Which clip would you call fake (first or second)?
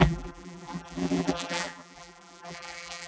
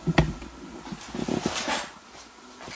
first